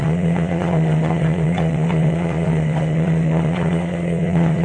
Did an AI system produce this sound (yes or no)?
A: yes